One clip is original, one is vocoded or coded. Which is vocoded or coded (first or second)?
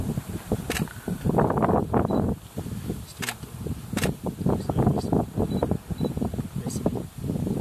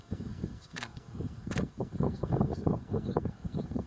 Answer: second